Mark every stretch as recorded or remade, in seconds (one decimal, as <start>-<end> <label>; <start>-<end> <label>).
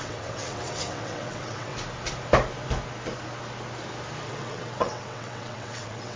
0.0-1.7 remade; 1.7-4.3 recorded; 4.3-6.2 remade